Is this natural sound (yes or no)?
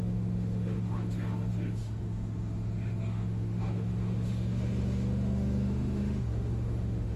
no